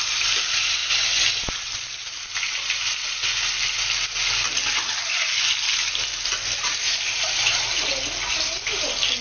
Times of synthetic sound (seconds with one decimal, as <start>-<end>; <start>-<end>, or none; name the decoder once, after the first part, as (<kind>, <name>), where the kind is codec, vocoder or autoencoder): 0.0-0.8 (vocoder, BigVGAN v2); 1.5-1.9; 6.6-7.9; 8.5-9.2